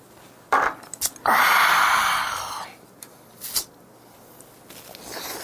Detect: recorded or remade recorded